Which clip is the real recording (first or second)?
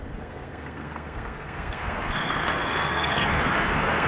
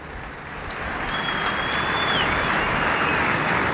second